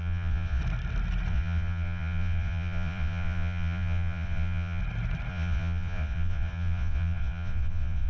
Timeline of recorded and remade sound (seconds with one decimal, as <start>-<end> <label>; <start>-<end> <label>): 0.0-0.6 remade; 0.6-1.3 recorded; 1.3-4.8 remade; 4.8-5.3 recorded; 5.3-8.1 remade